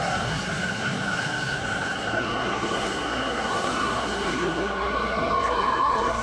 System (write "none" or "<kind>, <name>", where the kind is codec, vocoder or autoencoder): codec, SNAC